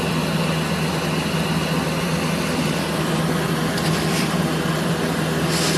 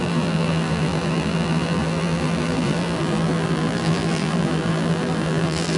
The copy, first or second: second